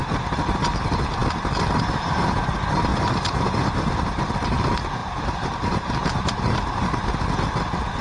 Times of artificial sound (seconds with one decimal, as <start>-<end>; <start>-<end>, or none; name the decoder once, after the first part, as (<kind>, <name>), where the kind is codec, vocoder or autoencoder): 2.9-4.0 (vocoder, BigVGAN v2); 5.0-7.0